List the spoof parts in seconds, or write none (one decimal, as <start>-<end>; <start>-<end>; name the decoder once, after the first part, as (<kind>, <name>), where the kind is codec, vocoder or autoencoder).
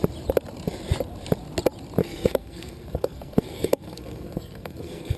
2.0-5.2 (codec, SNAC)